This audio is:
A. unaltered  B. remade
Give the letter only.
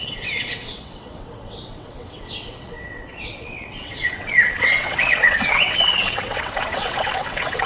B